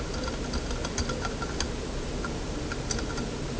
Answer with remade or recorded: recorded